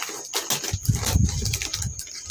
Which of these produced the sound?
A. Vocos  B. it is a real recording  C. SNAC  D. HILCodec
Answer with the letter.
B